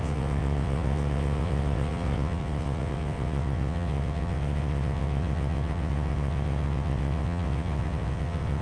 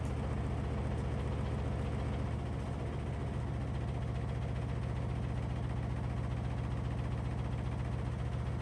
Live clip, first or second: second